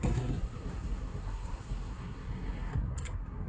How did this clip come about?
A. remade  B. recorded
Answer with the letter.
A